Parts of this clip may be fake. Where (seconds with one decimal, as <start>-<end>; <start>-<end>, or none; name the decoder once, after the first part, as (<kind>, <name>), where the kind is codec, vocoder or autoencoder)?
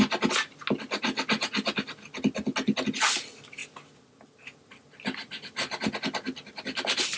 none